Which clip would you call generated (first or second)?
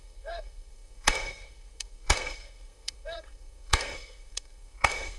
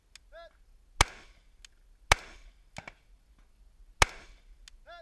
first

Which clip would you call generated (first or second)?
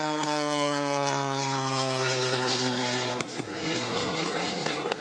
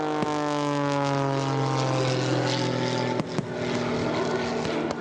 first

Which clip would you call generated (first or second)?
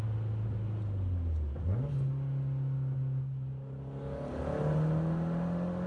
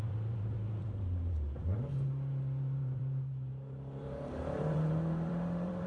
second